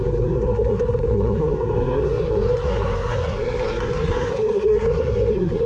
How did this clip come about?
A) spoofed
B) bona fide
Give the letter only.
A